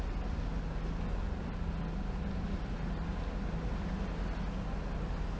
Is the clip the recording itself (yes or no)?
yes